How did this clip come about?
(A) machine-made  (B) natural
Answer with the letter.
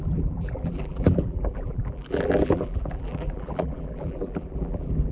A